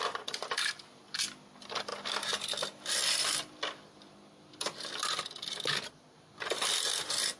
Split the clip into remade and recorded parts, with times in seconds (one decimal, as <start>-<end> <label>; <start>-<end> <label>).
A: 0.0-7.4 recorded